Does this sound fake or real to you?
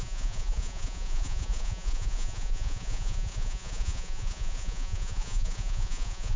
fake